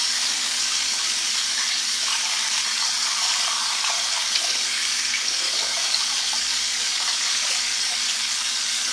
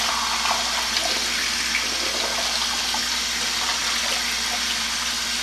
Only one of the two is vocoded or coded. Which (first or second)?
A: first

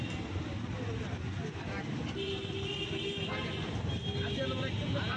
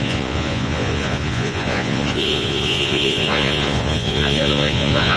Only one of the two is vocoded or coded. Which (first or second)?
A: second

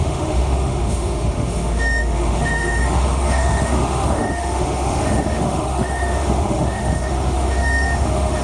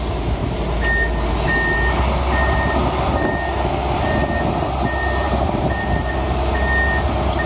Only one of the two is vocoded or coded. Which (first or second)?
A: first